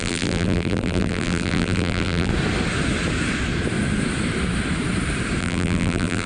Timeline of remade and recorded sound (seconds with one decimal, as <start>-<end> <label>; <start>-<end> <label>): 0.0-2.3 remade; 2.3-5.4 recorded; 5.4-6.3 remade